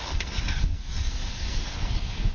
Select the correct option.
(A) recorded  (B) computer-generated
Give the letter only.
B